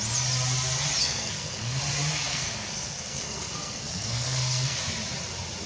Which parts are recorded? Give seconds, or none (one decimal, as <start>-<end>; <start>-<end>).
0.0-1.0; 1.8-2.3; 4.8-5.7